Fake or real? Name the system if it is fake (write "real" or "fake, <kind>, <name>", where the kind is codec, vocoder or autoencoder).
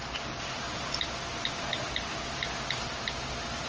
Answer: real